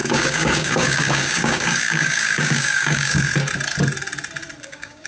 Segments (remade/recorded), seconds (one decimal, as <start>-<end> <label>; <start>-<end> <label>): 0.0-3.3 remade; 3.3-4.6 recorded; 4.6-5.1 remade